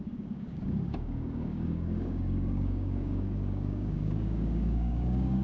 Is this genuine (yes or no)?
no